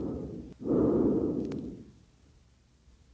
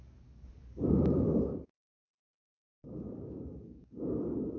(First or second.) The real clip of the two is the first